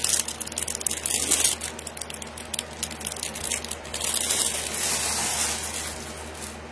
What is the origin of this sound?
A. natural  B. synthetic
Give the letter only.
A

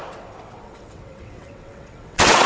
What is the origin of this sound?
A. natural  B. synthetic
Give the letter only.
B